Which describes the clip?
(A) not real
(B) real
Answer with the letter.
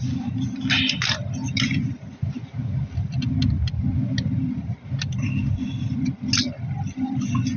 B